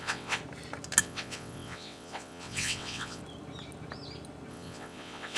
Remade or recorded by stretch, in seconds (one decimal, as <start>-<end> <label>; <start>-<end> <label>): 0.0-0.4 remade; 0.4-1.0 recorded; 1.0-3.2 remade; 3.2-4.5 recorded; 4.5-5.4 remade

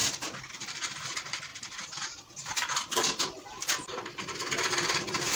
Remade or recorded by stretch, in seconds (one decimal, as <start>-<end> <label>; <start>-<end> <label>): 0.0-0.5 recorded; 0.5-1.5 remade; 1.5-4.7 recorded; 4.7-5.4 remade

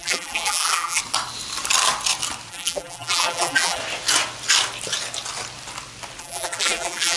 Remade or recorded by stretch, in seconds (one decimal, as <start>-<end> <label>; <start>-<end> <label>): 0.0-1.0 remade; 1.0-2.5 recorded; 2.5-3.8 remade; 3.8-6.2 recorded; 6.2-7.2 remade

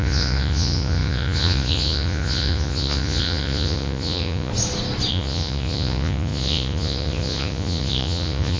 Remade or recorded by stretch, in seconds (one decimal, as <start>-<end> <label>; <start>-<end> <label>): 0.0-4.5 remade; 4.5-5.1 recorded; 5.1-8.6 remade

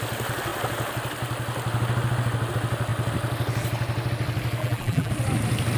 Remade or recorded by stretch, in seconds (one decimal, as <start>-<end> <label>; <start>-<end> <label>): 0.0-4.6 recorded; 4.6-5.1 remade; 5.1-5.8 recorded

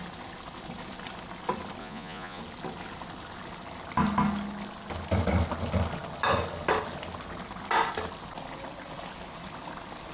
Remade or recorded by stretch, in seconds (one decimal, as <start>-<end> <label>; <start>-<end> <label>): 0.0-1.8 recorded; 1.8-2.4 remade; 2.4-10.1 recorded

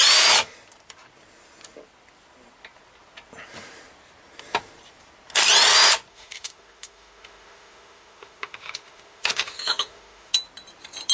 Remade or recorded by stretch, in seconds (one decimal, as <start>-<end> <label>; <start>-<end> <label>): 0.0-6.1 recorded; 6.1-10.3 remade; 10.3-11.1 recorded

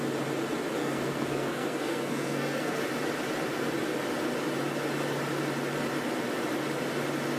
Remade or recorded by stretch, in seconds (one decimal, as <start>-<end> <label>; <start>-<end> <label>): 0.0-0.8 recorded; 0.8-2.8 remade; 2.8-7.4 recorded